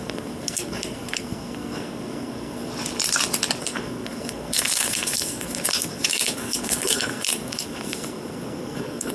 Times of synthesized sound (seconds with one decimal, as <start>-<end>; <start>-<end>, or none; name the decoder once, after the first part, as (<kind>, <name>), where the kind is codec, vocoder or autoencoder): 0.0-2.7 (codec, SNAC); 3.6-9.1